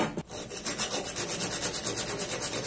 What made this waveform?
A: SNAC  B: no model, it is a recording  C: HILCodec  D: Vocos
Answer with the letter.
B